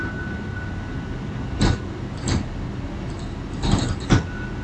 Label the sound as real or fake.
real